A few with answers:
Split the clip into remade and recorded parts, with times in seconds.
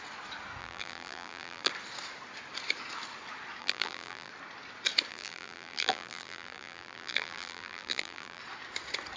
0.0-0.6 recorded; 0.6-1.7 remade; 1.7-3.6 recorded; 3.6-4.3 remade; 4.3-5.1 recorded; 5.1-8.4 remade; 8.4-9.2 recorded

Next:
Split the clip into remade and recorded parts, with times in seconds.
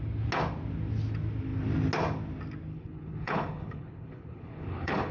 0.0-2.7 recorded; 2.7-5.1 remade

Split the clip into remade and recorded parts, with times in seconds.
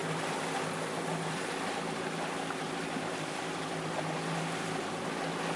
0.0-5.6 recorded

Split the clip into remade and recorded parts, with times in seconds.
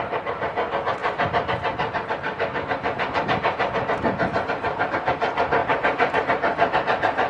0.0-5.6 recorded; 5.6-7.3 remade